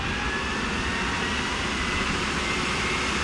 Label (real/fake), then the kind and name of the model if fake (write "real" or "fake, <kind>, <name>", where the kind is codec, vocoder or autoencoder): real